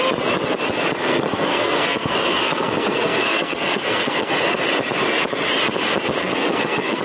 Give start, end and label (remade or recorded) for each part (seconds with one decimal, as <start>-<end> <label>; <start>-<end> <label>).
0.0-1.0 recorded; 1.0-4.3 remade; 4.3-6.2 recorded; 6.2-7.0 remade